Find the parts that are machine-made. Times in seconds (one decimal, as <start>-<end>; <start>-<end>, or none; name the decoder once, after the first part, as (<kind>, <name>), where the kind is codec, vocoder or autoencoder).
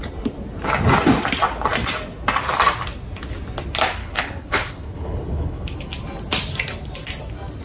4.0-5.7 (codec, HILCodec)